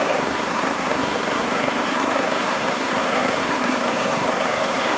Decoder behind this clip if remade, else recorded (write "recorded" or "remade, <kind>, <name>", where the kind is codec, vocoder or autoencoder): remade, codec, SNAC